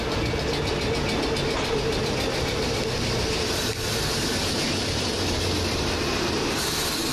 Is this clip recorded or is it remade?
recorded